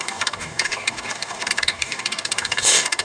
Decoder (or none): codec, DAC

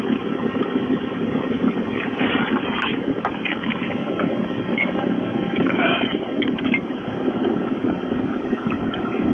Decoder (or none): codec, DAC